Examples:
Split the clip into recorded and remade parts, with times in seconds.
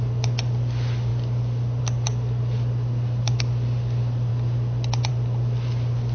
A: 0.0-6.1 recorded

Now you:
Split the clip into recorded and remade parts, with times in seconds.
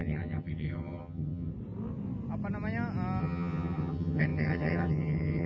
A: 0.0-1.5 remade; 1.5-3.2 recorded; 3.2-5.5 remade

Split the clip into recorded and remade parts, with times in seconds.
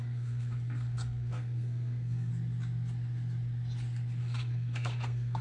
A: 0.0-2.3 remade; 2.3-4.2 recorded; 4.2-5.4 remade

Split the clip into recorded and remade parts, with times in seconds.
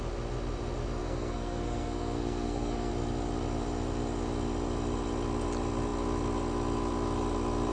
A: 0.0-1.0 recorded; 1.0-2.9 remade; 2.9-7.7 recorded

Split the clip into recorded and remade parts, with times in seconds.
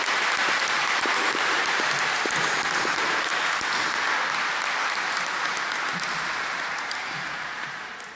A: 0.0-0.6 recorded; 0.6-3.3 remade; 3.3-5.9 recorded; 5.9-8.2 remade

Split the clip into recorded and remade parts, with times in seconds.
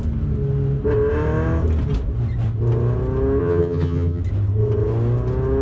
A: 0.0-3.4 recorded; 3.4-4.2 remade; 4.2-5.6 recorded